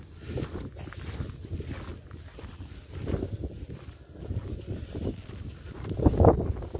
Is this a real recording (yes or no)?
yes